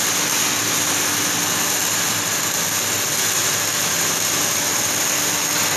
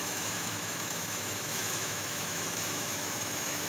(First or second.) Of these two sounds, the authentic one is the first